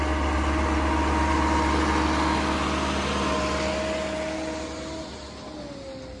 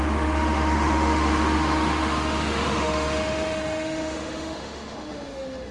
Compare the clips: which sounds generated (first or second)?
second